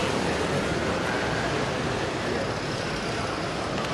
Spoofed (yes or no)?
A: no